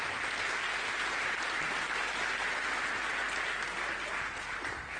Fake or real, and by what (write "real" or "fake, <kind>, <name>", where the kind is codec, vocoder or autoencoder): real